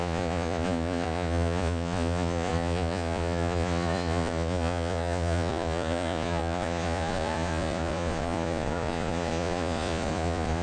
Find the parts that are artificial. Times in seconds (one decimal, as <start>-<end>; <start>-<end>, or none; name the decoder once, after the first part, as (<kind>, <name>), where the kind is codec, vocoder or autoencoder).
0.0-10.6 (vocoder, Vocos)